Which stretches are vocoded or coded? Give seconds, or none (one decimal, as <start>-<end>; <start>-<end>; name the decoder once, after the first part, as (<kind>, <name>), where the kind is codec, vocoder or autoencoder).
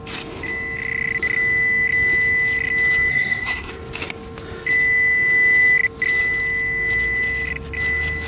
3.1-3.7 (codec, SNAC)